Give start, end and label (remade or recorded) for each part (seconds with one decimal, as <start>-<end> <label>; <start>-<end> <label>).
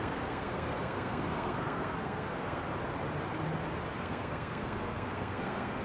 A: 0.0-2.6 remade; 2.6-4.0 recorded; 4.0-5.8 remade